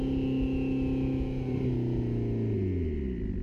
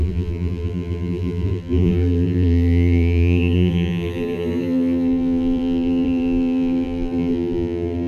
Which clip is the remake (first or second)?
second